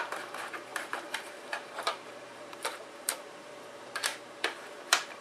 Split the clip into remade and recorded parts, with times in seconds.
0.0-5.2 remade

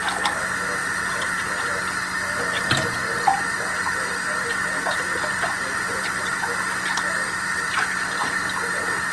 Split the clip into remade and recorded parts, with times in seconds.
0.0-5.3 recorded; 5.3-6.2 remade; 6.2-9.1 recorded